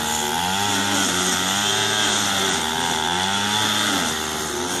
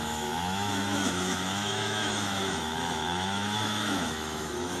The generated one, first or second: second